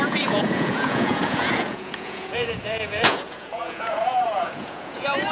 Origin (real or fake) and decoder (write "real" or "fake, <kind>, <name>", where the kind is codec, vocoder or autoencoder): fake, vocoder, Vocos